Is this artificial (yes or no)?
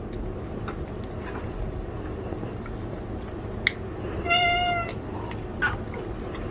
no